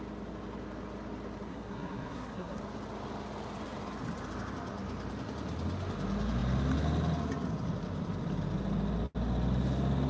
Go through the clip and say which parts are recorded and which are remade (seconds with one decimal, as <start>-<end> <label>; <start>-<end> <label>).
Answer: 0.0-1.5 recorded; 1.5-2.6 remade; 2.6-10.1 recorded